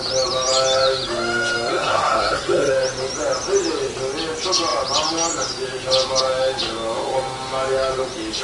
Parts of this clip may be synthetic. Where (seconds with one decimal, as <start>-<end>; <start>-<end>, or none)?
1.7-2.7

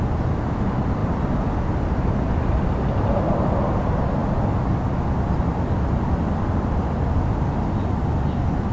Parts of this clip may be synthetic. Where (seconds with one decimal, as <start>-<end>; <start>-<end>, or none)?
none

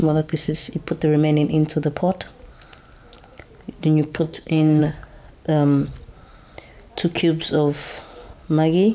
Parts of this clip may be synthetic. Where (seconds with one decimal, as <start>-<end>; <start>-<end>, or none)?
0.0-0.7; 4.1-4.8

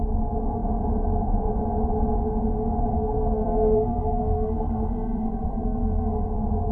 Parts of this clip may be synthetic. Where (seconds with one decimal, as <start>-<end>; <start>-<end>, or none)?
2.9-6.1

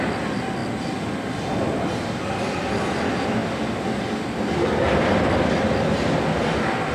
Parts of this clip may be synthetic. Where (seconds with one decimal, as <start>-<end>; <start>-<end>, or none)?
none

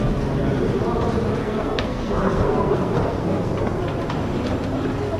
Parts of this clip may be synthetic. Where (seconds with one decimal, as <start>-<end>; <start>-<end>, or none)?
1.4-3.8

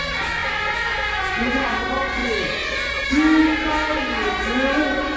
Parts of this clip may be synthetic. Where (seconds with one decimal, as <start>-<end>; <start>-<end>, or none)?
none